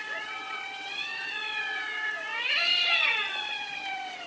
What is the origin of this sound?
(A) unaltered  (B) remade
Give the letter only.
B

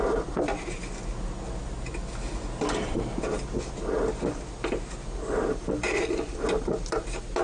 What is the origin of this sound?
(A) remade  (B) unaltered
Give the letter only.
B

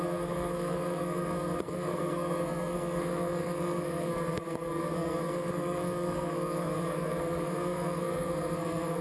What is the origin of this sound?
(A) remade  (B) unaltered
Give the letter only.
A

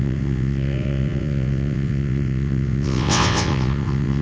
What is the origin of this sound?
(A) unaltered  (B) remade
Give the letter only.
B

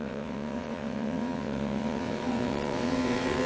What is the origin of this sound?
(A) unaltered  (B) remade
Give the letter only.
B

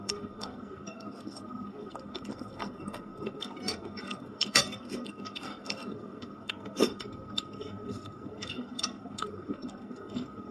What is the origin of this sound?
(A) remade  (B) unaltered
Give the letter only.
A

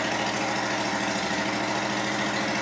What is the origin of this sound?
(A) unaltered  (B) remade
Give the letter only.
A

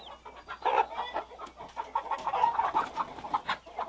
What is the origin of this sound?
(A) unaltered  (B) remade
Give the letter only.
A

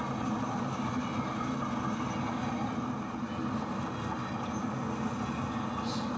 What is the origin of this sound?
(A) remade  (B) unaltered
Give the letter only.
B